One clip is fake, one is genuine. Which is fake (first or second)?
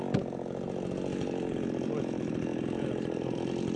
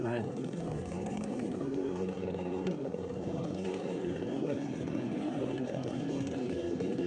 second